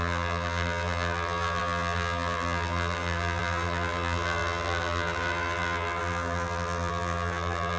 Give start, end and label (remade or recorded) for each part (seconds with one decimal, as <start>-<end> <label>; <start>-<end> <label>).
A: 0.0-7.8 remade